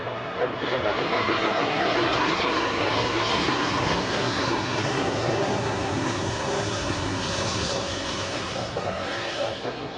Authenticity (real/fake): fake